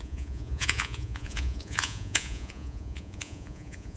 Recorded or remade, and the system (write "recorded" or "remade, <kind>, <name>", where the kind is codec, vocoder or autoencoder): remade, vocoder, Vocos